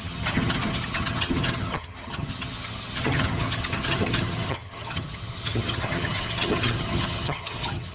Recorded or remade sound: remade